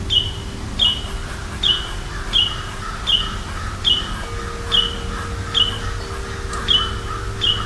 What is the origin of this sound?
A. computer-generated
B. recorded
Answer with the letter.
B